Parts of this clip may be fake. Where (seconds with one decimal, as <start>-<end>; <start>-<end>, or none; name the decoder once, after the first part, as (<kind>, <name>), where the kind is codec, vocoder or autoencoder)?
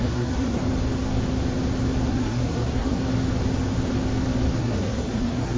0.0-0.6 (codec, SNAC); 2.1-3.0; 4.6-5.6